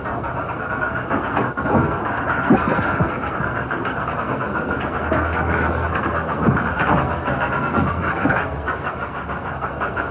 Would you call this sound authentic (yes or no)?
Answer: no